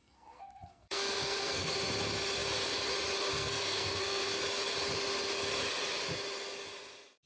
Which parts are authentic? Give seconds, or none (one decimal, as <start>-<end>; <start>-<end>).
1.7-3.3; 4.4-7.3